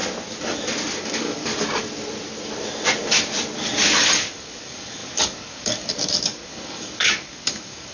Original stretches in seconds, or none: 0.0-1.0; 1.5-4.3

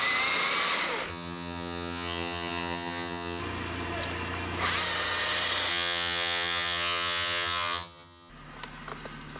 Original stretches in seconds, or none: 0.0-1.1; 3.4-5.7; 8.3-9.4

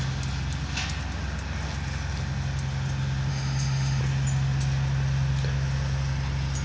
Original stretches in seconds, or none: 0.0-3.3; 4.0-6.6